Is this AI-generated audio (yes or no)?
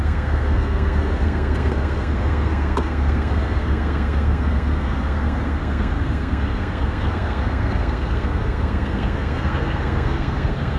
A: yes